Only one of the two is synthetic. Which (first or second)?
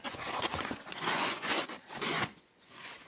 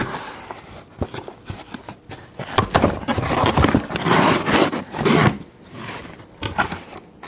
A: first